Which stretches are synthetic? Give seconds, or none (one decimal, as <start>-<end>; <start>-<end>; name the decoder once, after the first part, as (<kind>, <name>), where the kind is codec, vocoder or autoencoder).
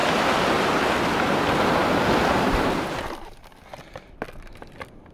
none